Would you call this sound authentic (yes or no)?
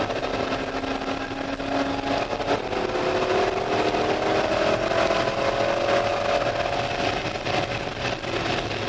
yes